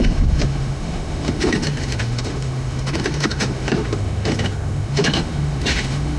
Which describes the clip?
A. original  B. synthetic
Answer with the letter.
B